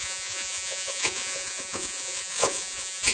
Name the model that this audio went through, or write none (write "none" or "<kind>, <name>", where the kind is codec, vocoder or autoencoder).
vocoder, Vocos